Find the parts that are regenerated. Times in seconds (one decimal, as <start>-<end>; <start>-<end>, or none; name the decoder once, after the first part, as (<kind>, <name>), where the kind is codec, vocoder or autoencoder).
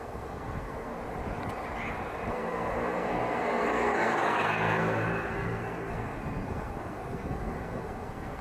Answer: 0.0-0.9 (codec, SNAC); 2.3-8.4